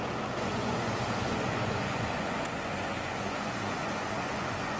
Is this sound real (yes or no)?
no